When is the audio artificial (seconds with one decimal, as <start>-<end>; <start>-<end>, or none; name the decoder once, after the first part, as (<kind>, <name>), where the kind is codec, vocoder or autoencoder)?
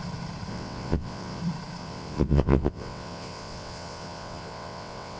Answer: 0.5-1.4 (vocoder, WaveNeXt); 1.8-5.2